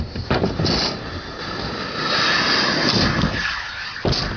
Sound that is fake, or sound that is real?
real